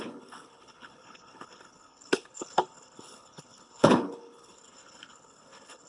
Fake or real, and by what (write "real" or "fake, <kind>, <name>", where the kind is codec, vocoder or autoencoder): fake, codec, HILCodec